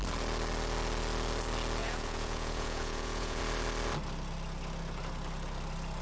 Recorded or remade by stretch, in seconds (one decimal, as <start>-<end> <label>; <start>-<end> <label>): 0.0-1.8 recorded; 1.8-3.4 remade; 3.4-6.0 recorded